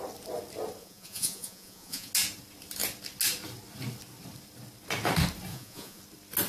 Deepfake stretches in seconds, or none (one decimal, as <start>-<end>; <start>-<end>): 0.8-2.1; 5.5-6.0